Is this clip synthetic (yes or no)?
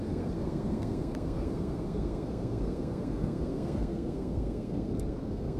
yes